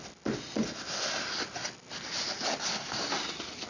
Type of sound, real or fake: real